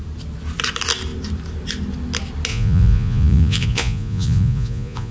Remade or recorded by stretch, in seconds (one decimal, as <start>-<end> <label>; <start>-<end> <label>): 0.0-2.5 recorded; 2.5-5.1 remade